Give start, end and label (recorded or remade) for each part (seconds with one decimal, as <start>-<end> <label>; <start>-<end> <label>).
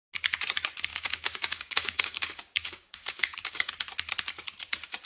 0.0-0.9 recorded; 0.9-3.7 remade; 3.7-5.1 recorded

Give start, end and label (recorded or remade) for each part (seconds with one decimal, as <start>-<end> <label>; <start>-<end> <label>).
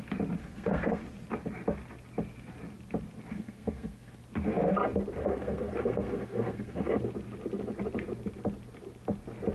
0.0-0.4 recorded; 0.4-1.0 remade; 1.0-3.3 recorded; 3.3-4.2 remade; 4.2-5.2 recorded; 5.2-7.0 remade; 7.0-9.5 recorded